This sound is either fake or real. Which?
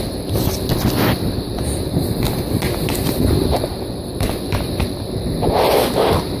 fake